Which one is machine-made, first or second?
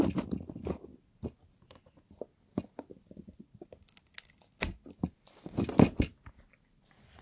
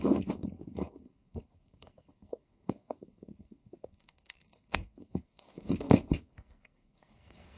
second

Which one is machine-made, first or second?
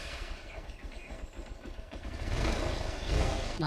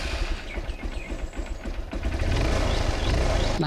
first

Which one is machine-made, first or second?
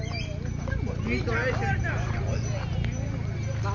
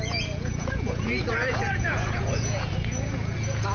second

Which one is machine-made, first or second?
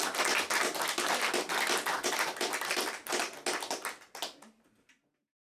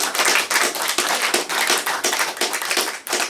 second